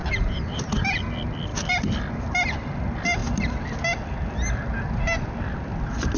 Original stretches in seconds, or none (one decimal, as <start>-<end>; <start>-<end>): 0.9-6.2